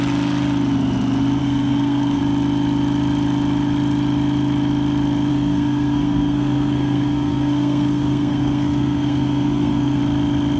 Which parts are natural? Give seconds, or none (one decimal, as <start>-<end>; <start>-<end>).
0.0-1.4; 2.2-5.3; 10.0-10.6